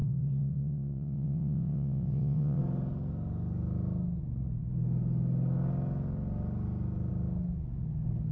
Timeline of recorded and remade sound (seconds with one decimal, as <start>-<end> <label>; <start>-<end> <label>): 0.0-2.6 remade; 2.6-8.3 recorded